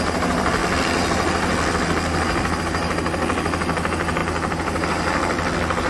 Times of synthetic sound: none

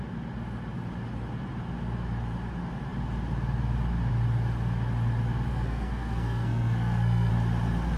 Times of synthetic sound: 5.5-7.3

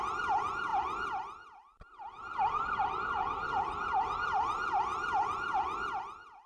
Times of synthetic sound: none